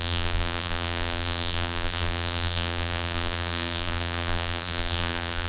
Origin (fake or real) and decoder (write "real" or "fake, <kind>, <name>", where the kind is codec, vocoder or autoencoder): fake, vocoder, BigVGAN v2